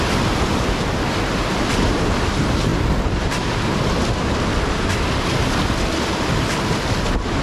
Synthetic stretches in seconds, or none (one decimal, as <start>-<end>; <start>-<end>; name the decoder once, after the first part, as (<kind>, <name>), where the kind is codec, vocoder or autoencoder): none